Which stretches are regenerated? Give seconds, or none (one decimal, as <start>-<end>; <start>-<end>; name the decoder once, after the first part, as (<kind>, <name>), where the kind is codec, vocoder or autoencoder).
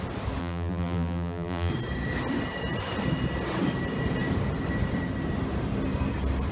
0.4-1.7 (vocoder, BigVGAN v2)